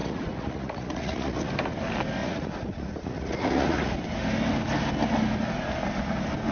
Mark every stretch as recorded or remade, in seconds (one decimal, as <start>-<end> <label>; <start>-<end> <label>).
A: 0.0-1.5 remade; 1.5-2.2 recorded; 2.2-3.9 remade; 3.9-6.5 recorded